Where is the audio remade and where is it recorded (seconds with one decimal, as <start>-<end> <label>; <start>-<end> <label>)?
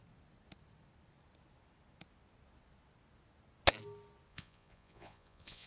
0.0-4.3 recorded; 4.3-5.7 remade